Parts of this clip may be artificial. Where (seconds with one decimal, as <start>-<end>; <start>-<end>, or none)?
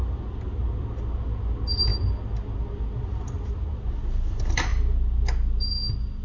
none